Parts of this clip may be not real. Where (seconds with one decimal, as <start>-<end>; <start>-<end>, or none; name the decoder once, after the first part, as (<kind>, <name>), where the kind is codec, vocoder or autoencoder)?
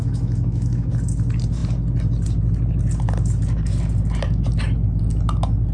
0.0-0.9 (autoencoder, DAC-VAE)